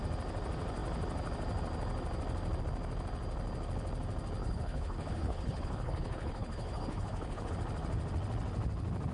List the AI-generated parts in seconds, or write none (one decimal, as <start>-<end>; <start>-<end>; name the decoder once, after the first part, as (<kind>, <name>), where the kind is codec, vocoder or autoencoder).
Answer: 4.4-7.5 (codec, HILCodec)